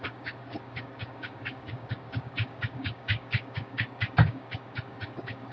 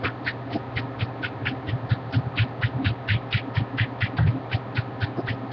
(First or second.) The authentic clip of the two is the second